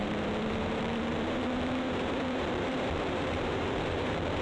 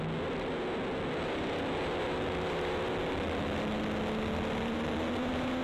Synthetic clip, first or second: first